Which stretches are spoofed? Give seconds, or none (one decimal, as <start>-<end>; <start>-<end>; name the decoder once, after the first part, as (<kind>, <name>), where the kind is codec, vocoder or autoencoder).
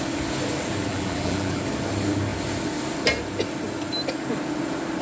0.9-1.6 (vocoder, BigVGAN v2)